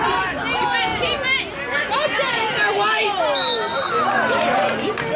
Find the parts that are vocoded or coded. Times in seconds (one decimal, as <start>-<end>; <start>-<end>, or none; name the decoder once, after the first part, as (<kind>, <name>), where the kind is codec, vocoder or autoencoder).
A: none